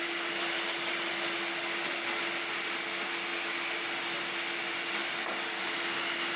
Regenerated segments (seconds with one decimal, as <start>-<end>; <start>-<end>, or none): none